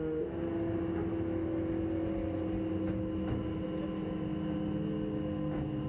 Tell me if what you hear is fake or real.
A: real